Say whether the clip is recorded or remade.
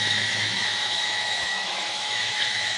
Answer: remade